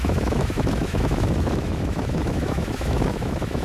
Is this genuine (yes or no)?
no